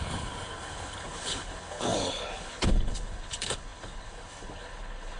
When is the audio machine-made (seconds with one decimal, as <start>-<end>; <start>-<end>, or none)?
0.0-5.2